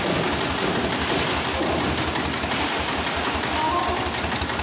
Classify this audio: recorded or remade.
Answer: recorded